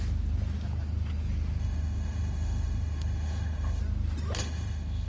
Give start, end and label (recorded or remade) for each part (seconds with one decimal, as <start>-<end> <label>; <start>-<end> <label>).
0.0-1.6 recorded; 1.6-3.8 remade; 3.8-4.4 recorded; 4.4-5.1 remade